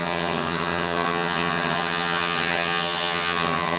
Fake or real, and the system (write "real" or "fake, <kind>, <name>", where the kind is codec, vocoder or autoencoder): fake, vocoder, HiFi-GAN